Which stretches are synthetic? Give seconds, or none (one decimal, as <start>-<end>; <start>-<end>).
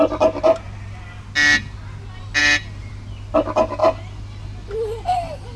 2.4-2.9; 3.8-5.6